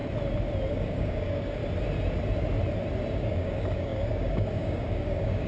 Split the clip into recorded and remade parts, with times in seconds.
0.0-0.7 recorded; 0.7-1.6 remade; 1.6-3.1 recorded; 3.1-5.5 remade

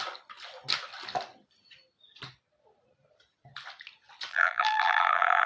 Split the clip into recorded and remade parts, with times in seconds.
0.0-4.3 recorded; 4.3-5.5 remade